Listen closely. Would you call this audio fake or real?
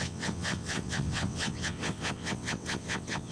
fake